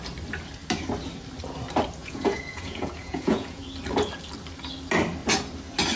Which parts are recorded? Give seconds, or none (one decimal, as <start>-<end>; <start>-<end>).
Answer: 0.0-2.0; 3.6-6.0